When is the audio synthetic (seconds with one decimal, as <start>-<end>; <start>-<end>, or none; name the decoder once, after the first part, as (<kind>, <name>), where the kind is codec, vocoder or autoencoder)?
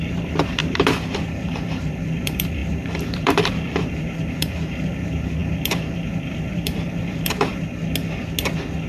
0.0-7.5 (vocoder, BigVGAN v2)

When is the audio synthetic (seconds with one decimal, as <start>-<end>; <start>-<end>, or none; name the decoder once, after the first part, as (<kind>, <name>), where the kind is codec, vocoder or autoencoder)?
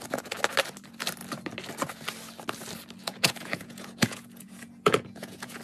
3.0-5.6 (vocoder, Vocos)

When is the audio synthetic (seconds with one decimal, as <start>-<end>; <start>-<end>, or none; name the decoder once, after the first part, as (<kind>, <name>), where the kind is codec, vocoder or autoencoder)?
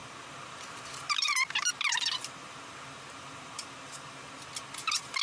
0.0-1.7 (vocoder, BigVGAN v2); 2.2-5.2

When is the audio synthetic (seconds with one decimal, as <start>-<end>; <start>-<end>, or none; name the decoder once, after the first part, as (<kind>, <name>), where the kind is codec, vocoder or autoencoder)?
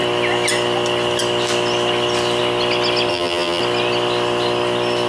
3.1-3.6 (vocoder, BigVGAN v2)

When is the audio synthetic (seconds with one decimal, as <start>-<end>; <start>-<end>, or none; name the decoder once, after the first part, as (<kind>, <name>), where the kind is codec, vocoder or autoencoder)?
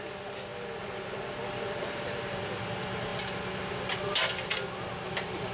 none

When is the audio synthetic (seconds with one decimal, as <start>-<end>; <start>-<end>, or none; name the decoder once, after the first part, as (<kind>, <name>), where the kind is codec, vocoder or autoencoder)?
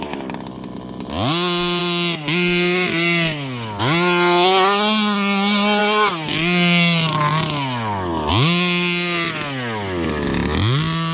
none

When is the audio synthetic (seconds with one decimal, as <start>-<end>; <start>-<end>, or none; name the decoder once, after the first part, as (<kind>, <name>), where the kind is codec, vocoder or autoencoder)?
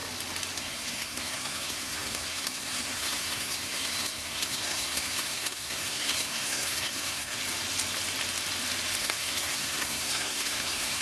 0.6-7.4 (codec, SNAC); 9.0-11.0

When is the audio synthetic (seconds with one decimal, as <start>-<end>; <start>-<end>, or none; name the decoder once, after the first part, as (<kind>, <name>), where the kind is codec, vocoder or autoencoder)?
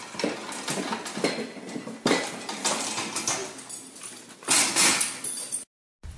none